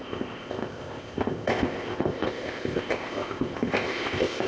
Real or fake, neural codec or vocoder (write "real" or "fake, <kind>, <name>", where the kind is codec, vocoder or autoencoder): fake, codec, ZipCodec